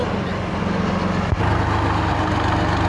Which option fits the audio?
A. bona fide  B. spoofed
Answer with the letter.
A